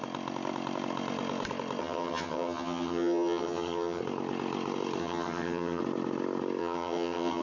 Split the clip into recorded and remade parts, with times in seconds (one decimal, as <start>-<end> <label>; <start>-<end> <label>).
0.0-1.8 recorded; 1.8-4.0 remade; 4.0-5.0 recorded; 5.0-5.8 remade; 5.8-6.6 recorded; 6.6-7.4 remade